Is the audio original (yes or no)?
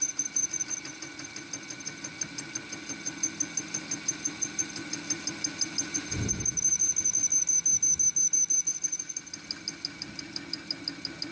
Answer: yes